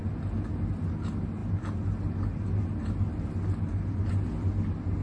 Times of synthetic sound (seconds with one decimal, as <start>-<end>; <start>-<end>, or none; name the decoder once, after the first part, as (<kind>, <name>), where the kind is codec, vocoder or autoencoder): none